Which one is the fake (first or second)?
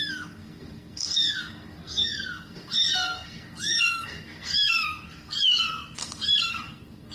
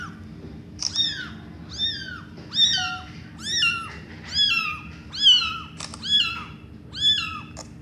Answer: first